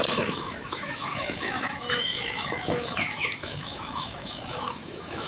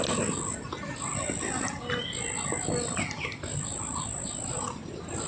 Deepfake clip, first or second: first